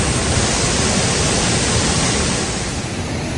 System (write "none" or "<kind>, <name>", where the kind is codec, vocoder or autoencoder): none